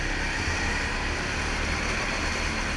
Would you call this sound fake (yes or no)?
no